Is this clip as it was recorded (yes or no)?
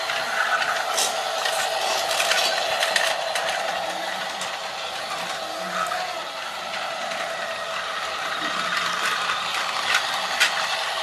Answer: yes